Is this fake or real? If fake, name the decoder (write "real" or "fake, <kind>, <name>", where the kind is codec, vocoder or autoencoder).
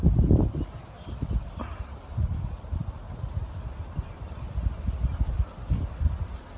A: fake, vocoder, BigVGAN v2